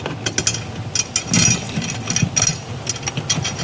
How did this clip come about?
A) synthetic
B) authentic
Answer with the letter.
B